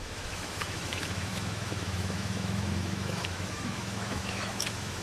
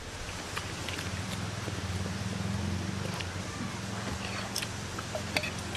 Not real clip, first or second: first